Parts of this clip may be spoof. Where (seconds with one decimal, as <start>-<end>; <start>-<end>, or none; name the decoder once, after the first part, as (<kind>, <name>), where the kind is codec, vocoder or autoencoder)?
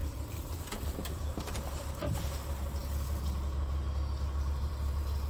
0.0-0.5 (vocoder, BigVGAN v2)